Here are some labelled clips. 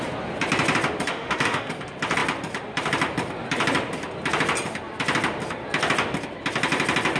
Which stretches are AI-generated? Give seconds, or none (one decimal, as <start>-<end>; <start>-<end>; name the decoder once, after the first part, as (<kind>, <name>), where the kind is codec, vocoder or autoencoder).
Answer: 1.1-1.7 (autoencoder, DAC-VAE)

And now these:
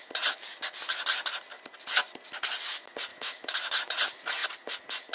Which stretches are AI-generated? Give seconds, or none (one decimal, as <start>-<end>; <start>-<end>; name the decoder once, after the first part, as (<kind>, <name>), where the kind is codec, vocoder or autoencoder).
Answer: 3.1-3.8 (autoencoder, DAC-VAE)

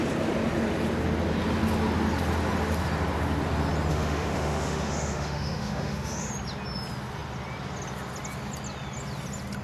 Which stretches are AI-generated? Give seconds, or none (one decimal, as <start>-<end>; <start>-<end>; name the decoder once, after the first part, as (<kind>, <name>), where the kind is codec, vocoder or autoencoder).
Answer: 3.9-6.3 (autoencoder, DAC-VAE)